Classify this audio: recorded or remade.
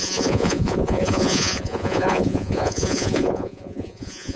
remade